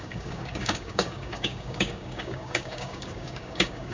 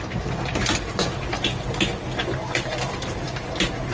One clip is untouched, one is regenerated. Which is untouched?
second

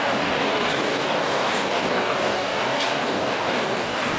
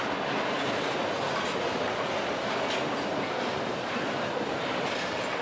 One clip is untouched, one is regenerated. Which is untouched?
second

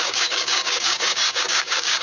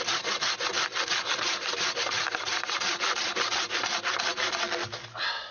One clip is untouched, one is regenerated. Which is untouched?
second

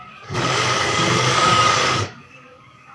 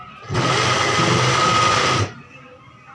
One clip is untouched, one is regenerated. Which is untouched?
second